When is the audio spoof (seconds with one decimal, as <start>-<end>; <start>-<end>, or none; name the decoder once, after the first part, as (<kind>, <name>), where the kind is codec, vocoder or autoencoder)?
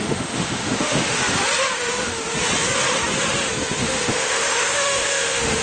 0.0-1.2 (autoencoder, DAC-VAE); 1.8-2.2; 3.8-5.6